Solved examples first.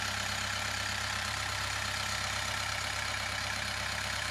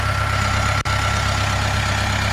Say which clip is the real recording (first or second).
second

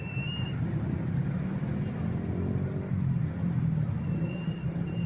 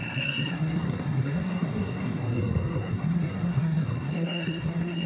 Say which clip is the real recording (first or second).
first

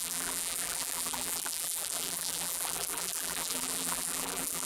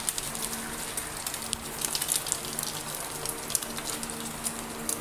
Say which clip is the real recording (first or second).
second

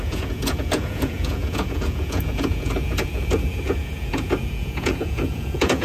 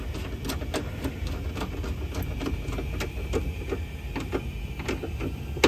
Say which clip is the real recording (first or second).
second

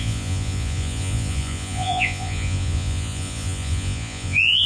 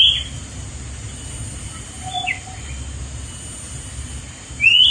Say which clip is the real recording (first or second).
second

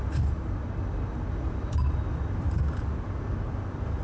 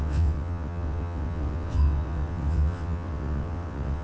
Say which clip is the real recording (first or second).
first